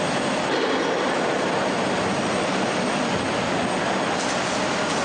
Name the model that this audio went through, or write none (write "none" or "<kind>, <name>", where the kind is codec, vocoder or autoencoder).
none